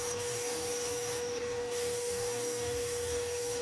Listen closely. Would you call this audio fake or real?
fake